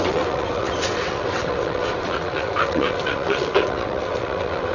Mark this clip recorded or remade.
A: remade